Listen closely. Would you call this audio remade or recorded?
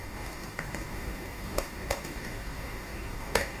remade